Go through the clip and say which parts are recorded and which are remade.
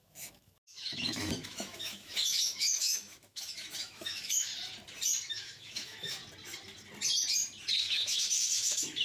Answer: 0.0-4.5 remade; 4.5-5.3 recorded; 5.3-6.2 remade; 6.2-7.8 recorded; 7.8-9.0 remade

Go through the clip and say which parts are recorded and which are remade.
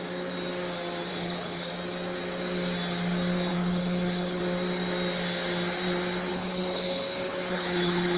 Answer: 0.0-1.1 recorded; 1.1-1.7 remade; 1.7-3.5 recorded; 3.5-4.4 remade; 4.4-6.3 recorded; 6.3-8.2 remade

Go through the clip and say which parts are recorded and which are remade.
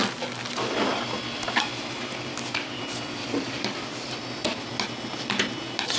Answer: 0.0-2.3 recorded; 2.3-2.8 remade; 2.8-3.2 recorded; 3.2-4.1 remade; 4.1-6.0 recorded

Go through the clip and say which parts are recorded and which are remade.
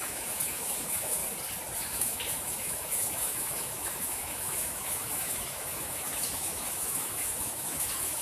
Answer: 0.0-1.2 remade; 1.2-1.8 recorded; 1.8-8.2 remade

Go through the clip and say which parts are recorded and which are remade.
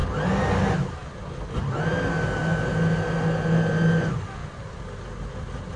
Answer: 0.0-5.8 recorded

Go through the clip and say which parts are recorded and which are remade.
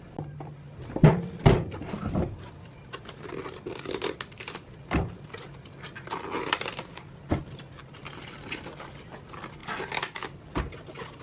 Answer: 0.0-11.2 recorded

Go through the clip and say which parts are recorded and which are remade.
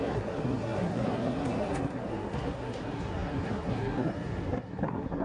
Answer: 0.0-5.2 remade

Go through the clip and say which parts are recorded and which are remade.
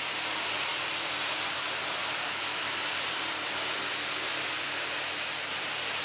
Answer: 0.0-0.7 remade; 0.7-1.5 recorded; 1.5-2.0 remade; 2.0-5.6 recorded; 5.6-6.0 remade